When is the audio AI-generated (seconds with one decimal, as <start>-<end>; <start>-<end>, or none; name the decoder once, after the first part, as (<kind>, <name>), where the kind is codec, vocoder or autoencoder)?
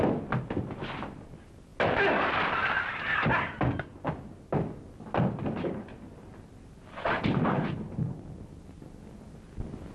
none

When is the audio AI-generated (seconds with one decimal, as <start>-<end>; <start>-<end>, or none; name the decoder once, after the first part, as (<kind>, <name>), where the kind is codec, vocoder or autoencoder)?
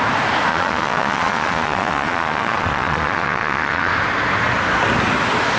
0.5-3.9 (vocoder, Vocos)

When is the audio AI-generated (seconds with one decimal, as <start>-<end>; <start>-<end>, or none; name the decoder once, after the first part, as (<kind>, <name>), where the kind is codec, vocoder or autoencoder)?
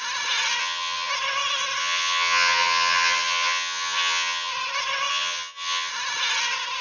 0.6-1.1 (vocoder, HiFi-GAN); 1.8-4.5; 5.1-5.9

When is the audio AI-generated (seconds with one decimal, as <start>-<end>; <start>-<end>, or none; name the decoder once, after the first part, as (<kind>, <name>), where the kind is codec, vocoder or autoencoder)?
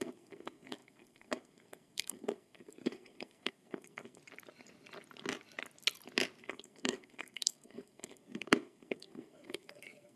0.0-4.2 (codec, SNAC); 6.4-10.2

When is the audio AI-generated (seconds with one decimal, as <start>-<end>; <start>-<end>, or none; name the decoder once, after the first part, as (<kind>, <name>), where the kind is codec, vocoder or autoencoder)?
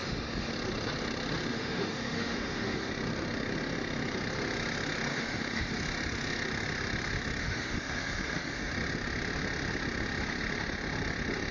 0.0-0.5 (autoencoder, DAC-VAE); 1.5-2.9; 5.1-5.7; 7.4-8.7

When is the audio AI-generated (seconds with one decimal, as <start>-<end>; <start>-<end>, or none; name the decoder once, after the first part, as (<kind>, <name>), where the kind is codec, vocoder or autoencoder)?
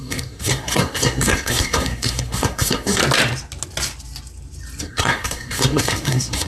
0.0-3.0 (codec, SNAC); 4.8-6.5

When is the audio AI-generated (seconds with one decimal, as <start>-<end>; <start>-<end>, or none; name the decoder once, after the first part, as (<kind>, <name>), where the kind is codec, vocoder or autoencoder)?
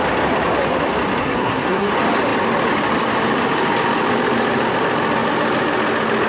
1.2-1.9 (codec, SNAC)